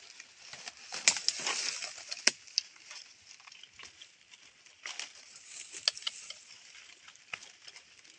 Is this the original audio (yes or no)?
yes